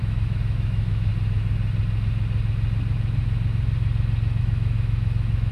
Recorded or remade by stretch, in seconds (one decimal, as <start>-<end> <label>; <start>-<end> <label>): 0.0-1.1 remade; 1.1-4.4 recorded; 4.4-5.5 remade